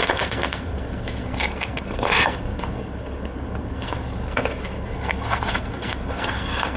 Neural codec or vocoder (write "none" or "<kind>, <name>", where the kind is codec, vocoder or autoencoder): codec, SNAC